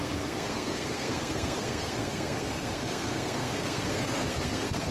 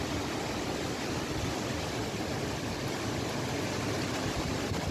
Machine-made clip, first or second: first